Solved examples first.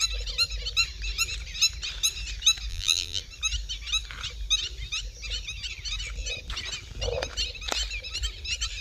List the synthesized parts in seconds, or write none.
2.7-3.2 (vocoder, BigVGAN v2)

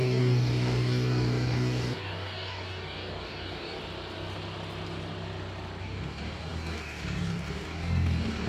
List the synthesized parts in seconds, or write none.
0.0-3.8 (codec, DAC); 5.8-8.5